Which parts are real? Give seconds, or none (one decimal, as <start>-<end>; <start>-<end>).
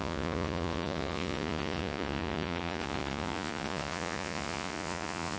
none